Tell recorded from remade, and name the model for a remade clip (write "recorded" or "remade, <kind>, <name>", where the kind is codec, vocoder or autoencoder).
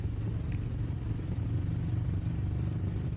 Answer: recorded